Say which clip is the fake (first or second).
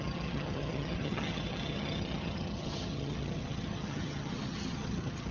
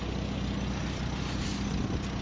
first